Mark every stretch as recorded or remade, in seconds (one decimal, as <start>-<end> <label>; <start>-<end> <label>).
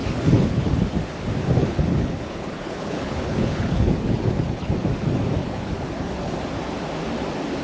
0.0-0.7 remade; 0.7-1.6 recorded; 1.6-4.7 remade; 4.7-5.4 recorded; 5.4-6.3 remade; 6.3-7.6 recorded